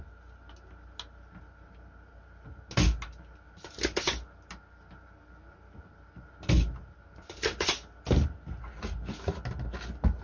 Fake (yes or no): no